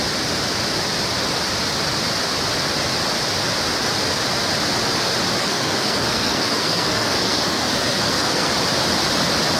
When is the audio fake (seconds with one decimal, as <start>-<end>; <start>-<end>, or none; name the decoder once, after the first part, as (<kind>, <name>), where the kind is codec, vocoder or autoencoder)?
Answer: 5.4-8.5 (codec, SNAC)